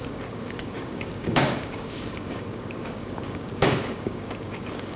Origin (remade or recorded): remade